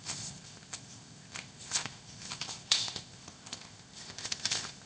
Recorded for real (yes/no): no